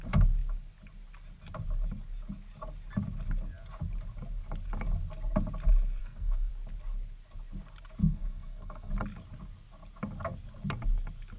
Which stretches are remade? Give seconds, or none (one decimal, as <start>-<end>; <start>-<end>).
6.0-6.5; 8.0-8.9